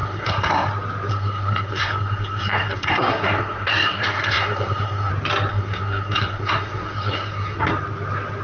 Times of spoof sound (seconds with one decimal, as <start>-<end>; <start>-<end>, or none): 0.0-0.7; 1.1-5.1; 5.5-7.7